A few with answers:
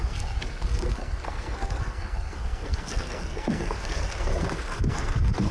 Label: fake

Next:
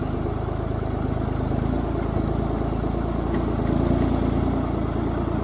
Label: real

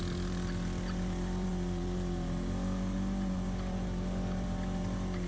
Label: real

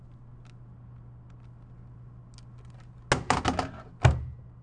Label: real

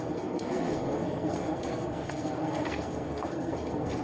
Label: fake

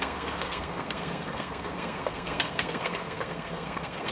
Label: fake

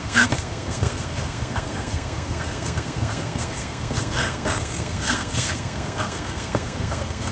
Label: fake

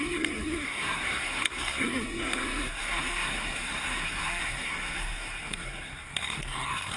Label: fake